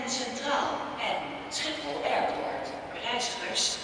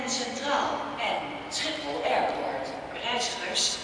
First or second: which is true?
second